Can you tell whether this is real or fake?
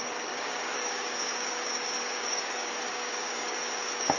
fake